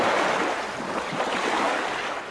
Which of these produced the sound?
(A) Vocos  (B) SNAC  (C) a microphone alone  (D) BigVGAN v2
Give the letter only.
C